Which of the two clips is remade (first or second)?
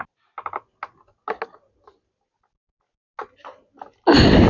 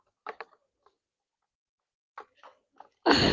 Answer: second